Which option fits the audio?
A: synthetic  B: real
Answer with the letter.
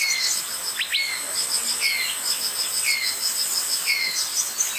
B